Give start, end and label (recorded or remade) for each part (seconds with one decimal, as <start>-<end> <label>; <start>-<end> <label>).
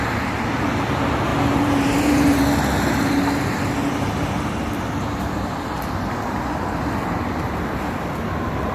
0.0-1.3 recorded; 1.3-2.4 remade; 2.4-8.7 recorded